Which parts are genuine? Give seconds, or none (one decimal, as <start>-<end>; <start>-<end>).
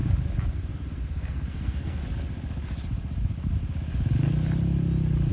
0.0-0.5; 2.0-5.3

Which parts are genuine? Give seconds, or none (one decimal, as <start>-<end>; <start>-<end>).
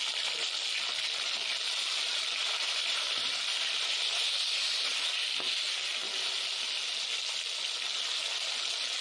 0.0-2.4; 4.9-9.0